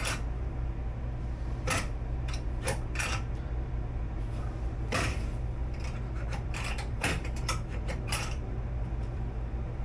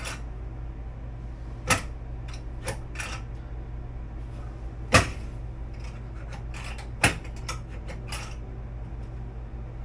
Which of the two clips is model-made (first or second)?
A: first